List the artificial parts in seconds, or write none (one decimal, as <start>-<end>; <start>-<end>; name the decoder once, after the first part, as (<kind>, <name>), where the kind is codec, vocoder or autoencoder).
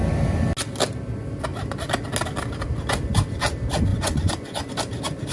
3.9-4.7 (vocoder, Vocos)